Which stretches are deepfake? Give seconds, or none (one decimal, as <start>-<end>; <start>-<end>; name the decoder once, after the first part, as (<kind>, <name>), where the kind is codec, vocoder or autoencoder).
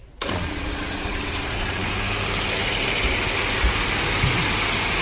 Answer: 0.0-1.9 (vocoder, Vocos)